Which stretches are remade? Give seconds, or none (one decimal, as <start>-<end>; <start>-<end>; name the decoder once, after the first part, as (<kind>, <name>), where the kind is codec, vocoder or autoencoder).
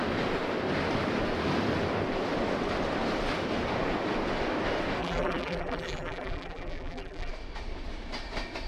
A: 5.0-7.3 (vocoder, BigVGAN v2)